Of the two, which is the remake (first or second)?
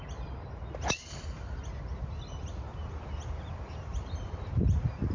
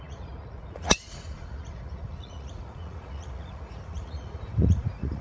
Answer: second